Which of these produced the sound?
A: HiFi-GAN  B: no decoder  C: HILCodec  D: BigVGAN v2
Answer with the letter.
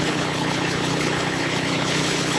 C